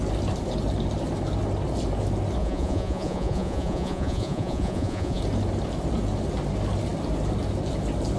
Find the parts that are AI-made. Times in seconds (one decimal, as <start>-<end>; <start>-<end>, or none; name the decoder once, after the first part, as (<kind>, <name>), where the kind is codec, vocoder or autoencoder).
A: 2.4-5.2 (vocoder, Vocos)